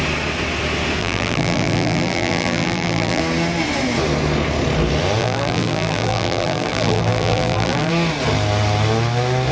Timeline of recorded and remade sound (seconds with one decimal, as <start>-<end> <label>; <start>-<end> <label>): 0.0-1.0 recorded; 1.0-3.2 remade; 3.2-5.2 recorded; 5.2-7.9 remade; 7.9-9.5 recorded